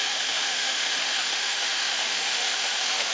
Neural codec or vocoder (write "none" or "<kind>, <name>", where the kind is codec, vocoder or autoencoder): autoencoder, DAC-VAE